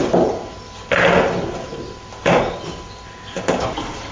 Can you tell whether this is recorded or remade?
recorded